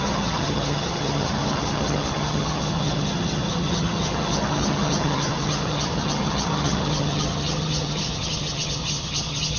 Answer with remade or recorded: remade